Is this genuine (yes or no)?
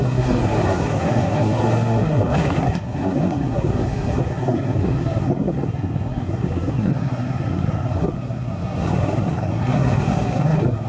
no